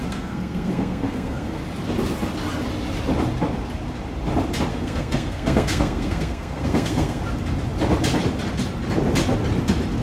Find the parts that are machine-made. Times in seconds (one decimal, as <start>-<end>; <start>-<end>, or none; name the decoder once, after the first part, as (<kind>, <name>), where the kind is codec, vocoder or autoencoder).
0.0-1.6 (codec, SNAC); 4.7-7.2